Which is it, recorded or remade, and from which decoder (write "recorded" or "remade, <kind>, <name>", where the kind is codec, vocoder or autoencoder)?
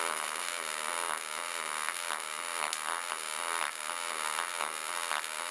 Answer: recorded